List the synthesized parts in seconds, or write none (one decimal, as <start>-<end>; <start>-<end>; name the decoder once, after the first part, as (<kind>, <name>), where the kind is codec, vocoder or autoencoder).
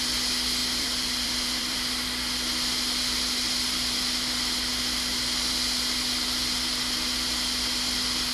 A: 0.6-1.9 (vocoder, BigVGAN v2)